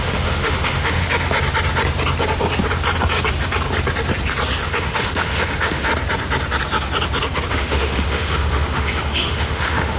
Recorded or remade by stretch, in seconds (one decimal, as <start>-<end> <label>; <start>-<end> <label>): 0.0-1.0 remade; 1.0-4.6 recorded; 4.6-5.9 remade; 5.9-7.5 recorded; 7.5-10.0 remade